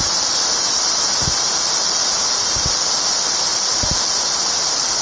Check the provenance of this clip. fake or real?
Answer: real